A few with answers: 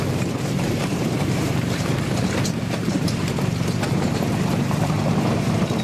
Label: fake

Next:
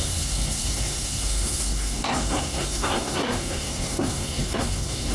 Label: fake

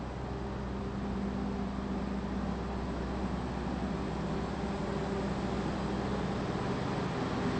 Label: real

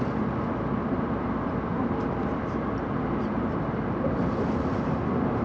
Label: real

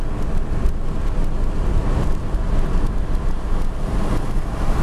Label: real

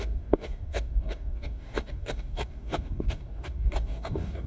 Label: fake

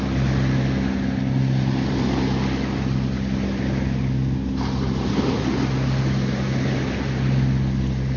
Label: real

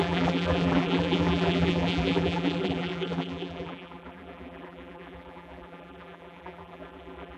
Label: fake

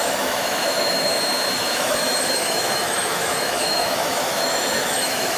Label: fake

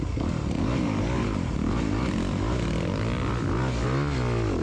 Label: real